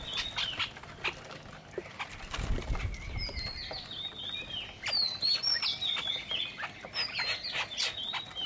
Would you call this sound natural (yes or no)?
yes